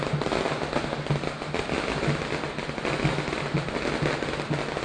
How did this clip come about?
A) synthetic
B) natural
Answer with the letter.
B